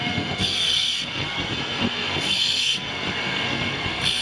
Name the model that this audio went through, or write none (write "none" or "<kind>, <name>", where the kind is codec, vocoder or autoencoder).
codec, SNAC